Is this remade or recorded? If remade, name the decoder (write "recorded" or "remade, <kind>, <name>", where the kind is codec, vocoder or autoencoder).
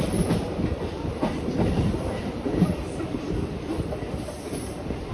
remade, vocoder, BigVGAN v2